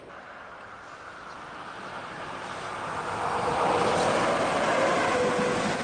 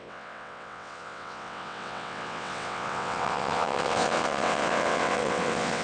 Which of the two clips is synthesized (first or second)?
second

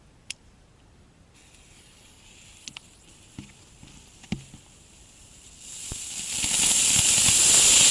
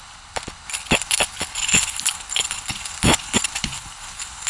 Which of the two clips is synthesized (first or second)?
second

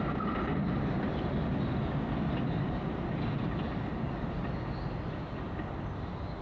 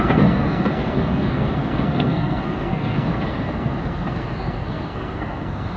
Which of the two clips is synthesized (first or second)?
second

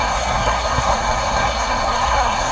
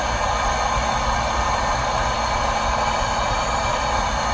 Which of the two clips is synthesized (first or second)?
first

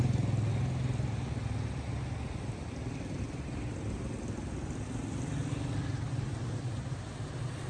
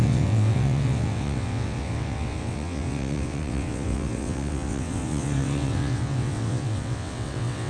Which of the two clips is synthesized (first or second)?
second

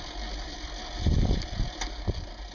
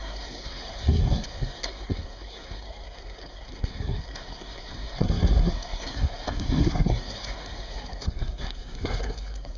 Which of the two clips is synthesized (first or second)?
second